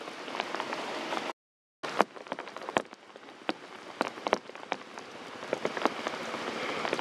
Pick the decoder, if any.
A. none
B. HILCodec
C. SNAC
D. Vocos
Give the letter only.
A